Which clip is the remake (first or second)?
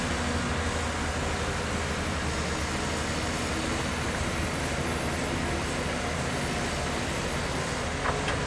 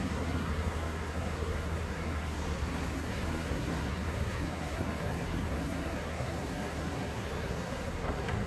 second